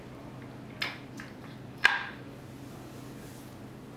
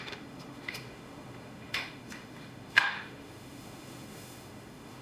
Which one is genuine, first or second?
first